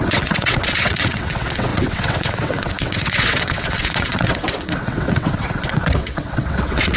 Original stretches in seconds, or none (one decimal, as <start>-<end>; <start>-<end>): none